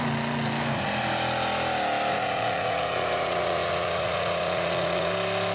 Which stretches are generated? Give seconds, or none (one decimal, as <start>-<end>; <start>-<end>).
2.1-5.1